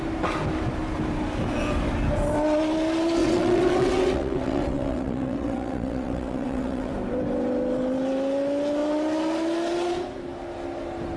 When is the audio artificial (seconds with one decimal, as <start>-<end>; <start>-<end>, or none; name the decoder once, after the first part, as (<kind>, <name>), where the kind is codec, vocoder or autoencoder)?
3.2-6.9 (vocoder, WaveNeXt)

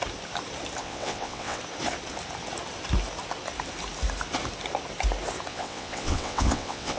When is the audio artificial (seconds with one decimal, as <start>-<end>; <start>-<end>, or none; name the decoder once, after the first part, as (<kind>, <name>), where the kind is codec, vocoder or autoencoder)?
0.8-1.6 (vocoder, WaveNeXt); 5.5-7.0

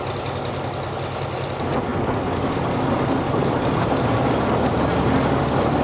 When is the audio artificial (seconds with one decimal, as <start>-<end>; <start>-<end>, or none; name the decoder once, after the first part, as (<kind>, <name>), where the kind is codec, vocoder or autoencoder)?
none

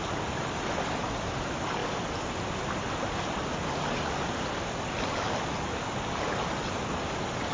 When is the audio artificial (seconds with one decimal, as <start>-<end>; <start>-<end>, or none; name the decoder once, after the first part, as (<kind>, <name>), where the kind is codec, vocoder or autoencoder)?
none

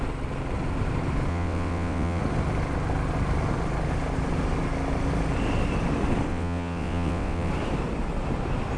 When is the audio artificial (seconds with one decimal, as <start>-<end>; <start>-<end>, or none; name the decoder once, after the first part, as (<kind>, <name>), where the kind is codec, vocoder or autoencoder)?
1.3-2.2 (vocoder, WaveNeXt); 6.3-7.5

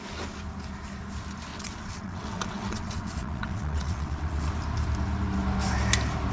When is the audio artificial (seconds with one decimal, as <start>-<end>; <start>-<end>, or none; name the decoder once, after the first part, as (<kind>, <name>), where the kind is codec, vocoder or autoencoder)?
1.5-4.5 (vocoder, WaveNeXt)